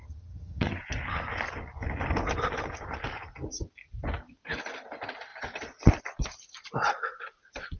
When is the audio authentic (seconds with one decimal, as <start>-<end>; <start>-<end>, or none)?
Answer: 0.8-7.8